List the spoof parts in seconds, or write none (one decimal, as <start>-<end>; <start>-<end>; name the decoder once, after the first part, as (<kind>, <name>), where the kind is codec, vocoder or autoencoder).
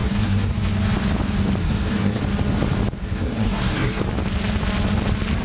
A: 0.0-0.5 (codec, SNAC); 1.6-2.2; 3.0-4.0